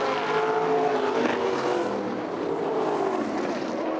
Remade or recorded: recorded